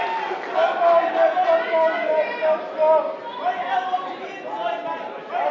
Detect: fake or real real